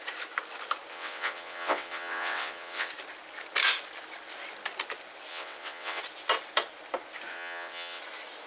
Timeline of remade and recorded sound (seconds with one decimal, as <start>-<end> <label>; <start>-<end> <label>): 0.0-0.9 recorded; 0.9-2.9 remade; 2.9-5.3 recorded; 5.3-6.0 remade; 6.0-7.3 recorded; 7.3-8.0 remade; 8.0-8.5 recorded